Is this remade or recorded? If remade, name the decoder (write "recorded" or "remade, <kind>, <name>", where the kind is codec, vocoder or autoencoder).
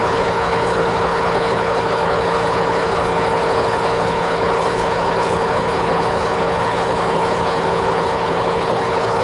remade, codec, HILCodec